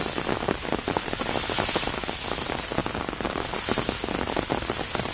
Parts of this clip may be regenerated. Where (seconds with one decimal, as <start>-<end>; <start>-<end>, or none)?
none